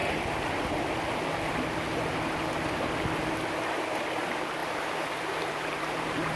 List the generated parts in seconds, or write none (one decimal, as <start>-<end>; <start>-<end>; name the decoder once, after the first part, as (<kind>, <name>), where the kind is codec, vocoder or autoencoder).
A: 4.6-6.4 (vocoder, BigVGAN v2)